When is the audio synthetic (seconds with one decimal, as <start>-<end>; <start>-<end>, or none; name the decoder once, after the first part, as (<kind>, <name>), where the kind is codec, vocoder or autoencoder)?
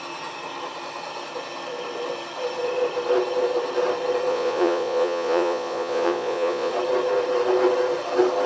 4.3-6.7 (vocoder, Vocos)